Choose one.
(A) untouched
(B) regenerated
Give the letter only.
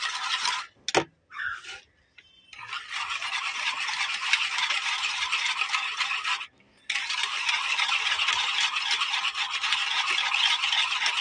A